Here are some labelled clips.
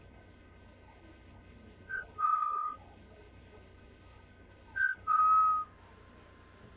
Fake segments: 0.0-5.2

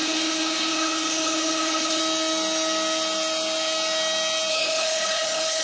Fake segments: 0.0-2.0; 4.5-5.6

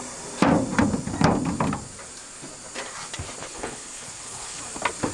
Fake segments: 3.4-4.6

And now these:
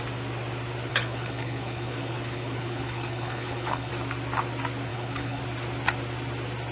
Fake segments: 0.9-3.9; 4.9-5.4

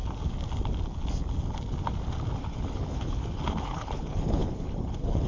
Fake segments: 2.4-5.3

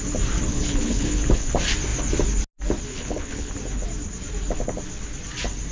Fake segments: 0.5-1.5; 2.9-3.5

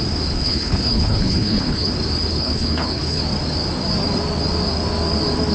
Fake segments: 0.4-1.9; 2.3-3.2